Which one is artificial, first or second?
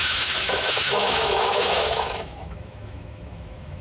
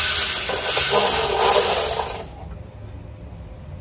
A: first